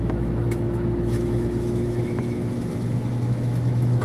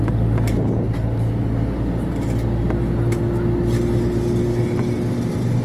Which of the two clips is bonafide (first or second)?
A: second